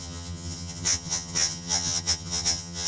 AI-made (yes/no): yes